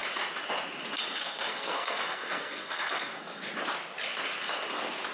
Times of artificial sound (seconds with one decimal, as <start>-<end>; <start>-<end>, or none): 1.0-3.4